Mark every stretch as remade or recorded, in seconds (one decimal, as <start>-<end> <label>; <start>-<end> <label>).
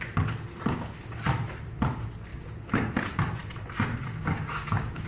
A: 0.0-2.3 recorded; 2.3-3.0 remade; 3.0-4.0 recorded; 4.0-5.1 remade